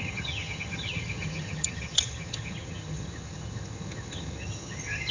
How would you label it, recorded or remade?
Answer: remade